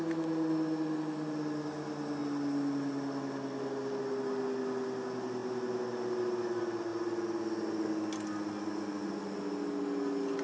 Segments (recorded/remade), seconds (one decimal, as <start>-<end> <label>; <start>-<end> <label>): 0.0-10.4 recorded